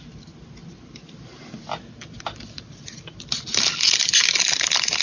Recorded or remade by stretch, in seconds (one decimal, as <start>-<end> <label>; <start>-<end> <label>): 0.0-0.6 recorded; 0.6-3.6 remade; 3.6-5.0 recorded